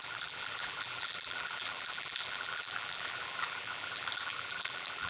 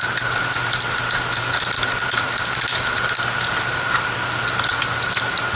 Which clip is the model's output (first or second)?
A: first